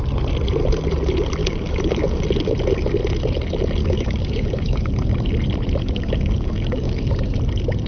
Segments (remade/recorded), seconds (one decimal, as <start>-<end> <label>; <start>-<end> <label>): 0.0-1.4 recorded; 1.4-2.2 remade; 2.2-3.8 recorded; 3.8-5.1 remade; 5.1-5.8 recorded; 5.8-7.1 remade; 7.1-7.9 recorded